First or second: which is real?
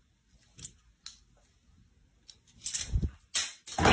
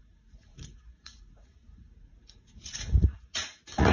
first